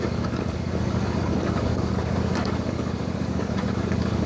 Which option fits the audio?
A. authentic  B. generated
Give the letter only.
B